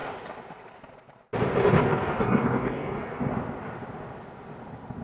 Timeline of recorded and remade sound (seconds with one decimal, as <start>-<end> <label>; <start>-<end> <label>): 0.0-1.9 recorded; 1.9-3.3 remade; 3.3-5.0 recorded